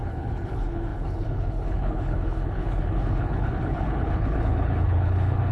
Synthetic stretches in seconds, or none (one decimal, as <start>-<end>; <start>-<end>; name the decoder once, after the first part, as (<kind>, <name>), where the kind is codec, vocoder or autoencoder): 0.0-5.5 (codec, HILCodec)